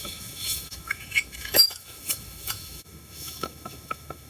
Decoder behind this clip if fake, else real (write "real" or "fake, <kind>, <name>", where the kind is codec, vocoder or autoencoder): fake, autoencoder, DAC-VAE